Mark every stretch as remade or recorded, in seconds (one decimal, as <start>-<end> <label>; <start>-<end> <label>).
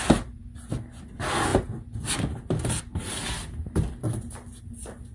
0.0-5.1 recorded